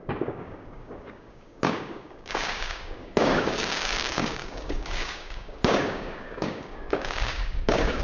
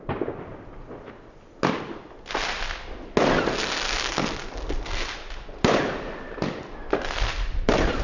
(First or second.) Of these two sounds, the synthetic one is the first